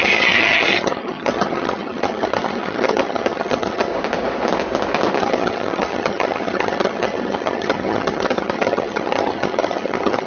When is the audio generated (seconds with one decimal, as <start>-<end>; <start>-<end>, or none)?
0.0-3.9; 5.2-10.3